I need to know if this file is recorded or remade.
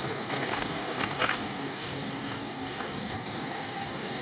remade